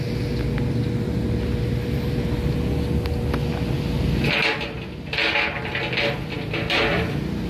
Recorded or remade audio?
recorded